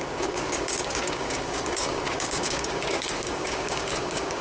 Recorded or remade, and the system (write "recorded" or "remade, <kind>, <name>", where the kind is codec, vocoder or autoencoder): remade, codec, DAC